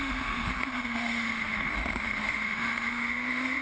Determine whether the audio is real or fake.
fake